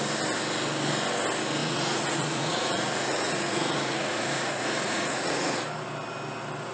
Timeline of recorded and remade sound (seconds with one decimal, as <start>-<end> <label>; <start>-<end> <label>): 0.0-1.6 recorded; 1.6-5.6 remade; 5.6-6.7 recorded

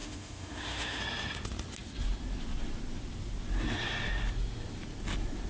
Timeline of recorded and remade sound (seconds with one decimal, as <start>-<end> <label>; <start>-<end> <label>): 0.0-1.0 remade; 1.0-5.5 recorded

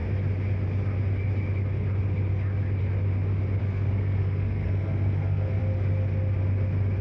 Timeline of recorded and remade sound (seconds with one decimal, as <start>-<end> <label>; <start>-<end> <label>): 0.0-3.6 recorded; 3.6-5.6 remade; 5.6-7.0 recorded